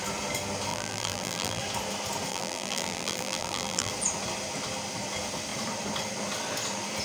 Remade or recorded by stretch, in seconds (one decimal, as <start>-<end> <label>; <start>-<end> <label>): 0.0-0.7 recorded; 0.7-1.6 remade; 1.6-2.3 recorded; 2.3-3.9 remade; 3.9-7.0 recorded